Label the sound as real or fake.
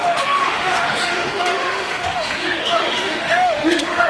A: fake